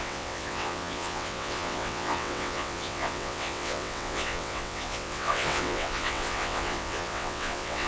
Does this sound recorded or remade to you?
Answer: remade